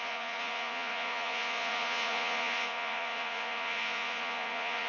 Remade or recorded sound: remade